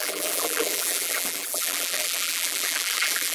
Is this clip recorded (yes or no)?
no